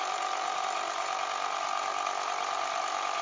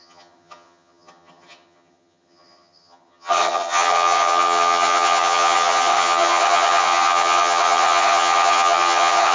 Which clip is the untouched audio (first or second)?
first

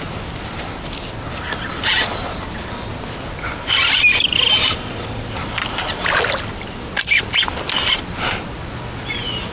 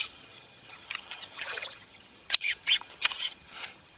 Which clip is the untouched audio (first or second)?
first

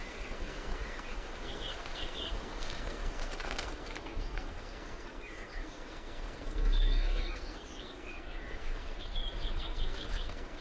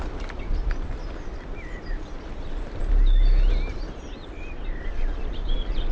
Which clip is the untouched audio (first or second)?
second